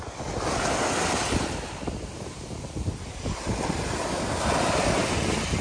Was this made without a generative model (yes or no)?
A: yes